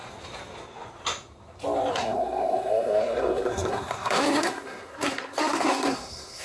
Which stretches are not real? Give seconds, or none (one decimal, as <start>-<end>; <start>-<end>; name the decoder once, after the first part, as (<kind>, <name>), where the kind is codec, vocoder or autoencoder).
1.9-6.4 (codec, SNAC)